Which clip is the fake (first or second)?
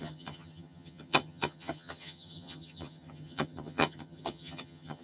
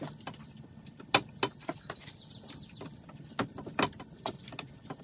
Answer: first